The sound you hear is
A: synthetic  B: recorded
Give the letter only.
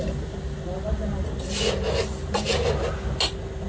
B